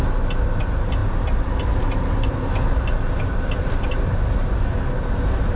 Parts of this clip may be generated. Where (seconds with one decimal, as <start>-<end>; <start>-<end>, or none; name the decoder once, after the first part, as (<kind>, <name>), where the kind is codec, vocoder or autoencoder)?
1.0-4.4 (vocoder, BigVGAN v2)